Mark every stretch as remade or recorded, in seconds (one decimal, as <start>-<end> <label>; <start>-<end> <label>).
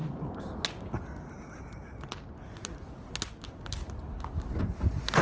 0.0-5.2 recorded